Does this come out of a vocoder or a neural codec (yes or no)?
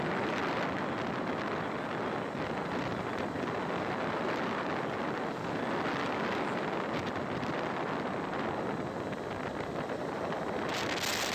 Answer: no